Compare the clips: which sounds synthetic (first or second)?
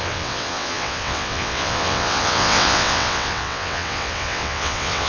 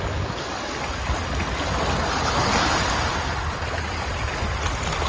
first